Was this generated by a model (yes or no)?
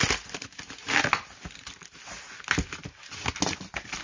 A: no